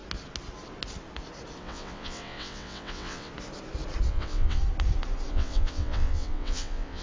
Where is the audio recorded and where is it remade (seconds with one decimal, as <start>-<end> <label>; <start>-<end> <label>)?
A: 0.0-1.6 recorded; 1.6-3.3 remade; 3.3-4.1 recorded; 4.1-4.6 remade; 4.6-5.3 recorded; 5.3-7.0 remade